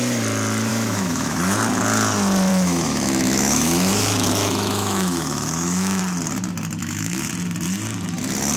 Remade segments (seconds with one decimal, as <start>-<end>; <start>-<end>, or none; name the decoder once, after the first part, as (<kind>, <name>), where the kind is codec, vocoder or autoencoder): 0.7-1.4 (autoencoder, DAC-VAE); 2.5-6.0; 6.8-7.3